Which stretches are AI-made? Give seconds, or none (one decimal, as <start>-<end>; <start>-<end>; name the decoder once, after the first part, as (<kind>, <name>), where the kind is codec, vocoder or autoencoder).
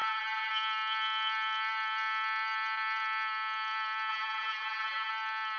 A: 0.0-0.5 (vocoder, BigVGAN v2); 4.1-5.1